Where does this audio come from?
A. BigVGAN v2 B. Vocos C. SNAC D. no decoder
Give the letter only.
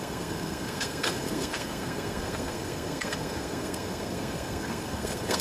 C